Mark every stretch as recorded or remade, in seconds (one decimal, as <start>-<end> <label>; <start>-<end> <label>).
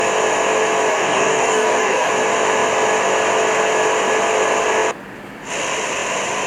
0.0-0.9 recorded; 0.9-2.1 remade; 2.1-6.5 recorded